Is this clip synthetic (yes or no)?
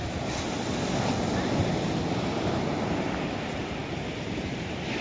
no